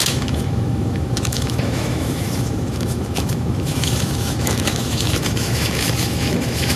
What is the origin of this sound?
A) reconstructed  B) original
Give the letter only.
A